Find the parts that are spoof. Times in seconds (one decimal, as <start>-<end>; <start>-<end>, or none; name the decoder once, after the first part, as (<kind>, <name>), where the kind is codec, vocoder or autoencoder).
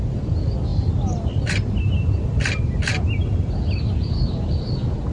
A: none